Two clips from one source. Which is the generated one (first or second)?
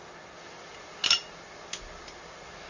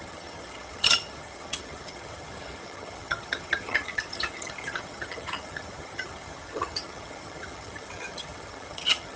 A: second